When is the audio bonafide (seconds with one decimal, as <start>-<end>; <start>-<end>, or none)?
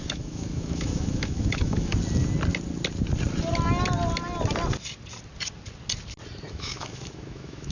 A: 1.9-6.5